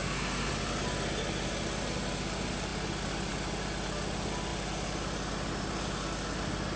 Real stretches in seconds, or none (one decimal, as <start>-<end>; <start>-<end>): 0.5-6.8